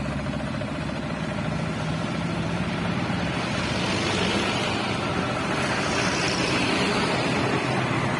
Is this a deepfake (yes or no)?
yes